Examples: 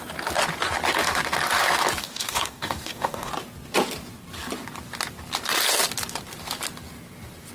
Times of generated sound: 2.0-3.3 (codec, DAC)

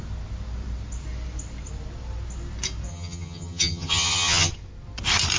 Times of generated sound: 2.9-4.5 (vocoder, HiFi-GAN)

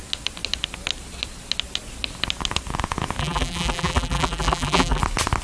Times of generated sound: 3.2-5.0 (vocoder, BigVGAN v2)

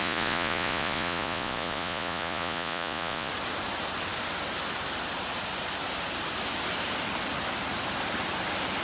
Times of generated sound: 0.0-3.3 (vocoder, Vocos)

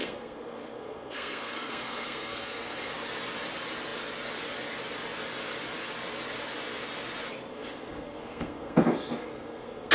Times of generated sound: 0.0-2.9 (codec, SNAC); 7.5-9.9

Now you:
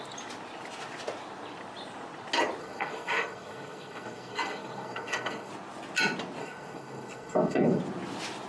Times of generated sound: 2.6-5.5 (codec, SNAC); 6.4-7.8